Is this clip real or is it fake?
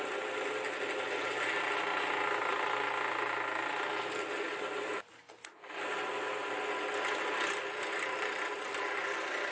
real